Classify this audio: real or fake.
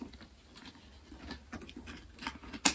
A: real